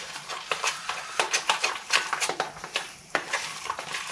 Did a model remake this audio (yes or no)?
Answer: yes